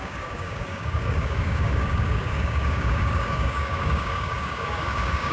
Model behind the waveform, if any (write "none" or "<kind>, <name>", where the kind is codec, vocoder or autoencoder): codec, DAC